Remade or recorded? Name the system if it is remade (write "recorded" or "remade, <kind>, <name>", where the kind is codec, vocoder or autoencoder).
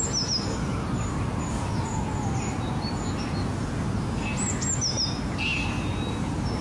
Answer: recorded